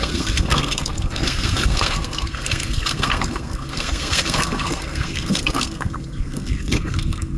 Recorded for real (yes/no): no